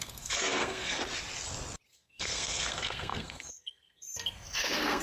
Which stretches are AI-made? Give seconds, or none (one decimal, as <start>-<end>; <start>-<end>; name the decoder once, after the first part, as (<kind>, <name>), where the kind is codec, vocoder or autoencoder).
0.0-1.0 (codec, SNAC); 1.9-5.0